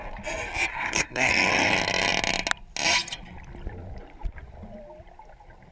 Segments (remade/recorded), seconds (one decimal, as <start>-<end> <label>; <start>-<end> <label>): 0.0-0.7 recorded; 0.7-1.3 remade; 1.3-5.7 recorded